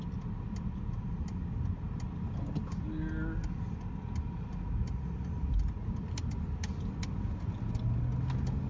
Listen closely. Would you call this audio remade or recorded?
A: recorded